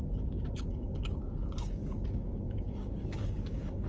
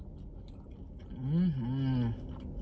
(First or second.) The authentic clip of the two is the second